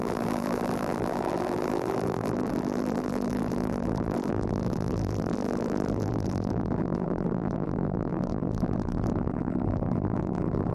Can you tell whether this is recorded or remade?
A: remade